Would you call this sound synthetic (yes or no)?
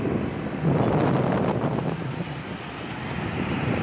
no